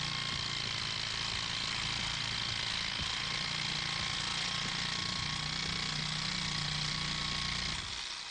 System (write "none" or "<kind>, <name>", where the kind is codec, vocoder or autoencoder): none